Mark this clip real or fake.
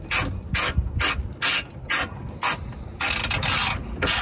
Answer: real